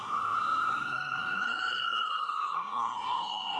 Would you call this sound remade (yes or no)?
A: yes